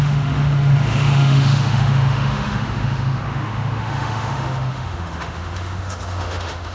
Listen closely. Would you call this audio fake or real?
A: fake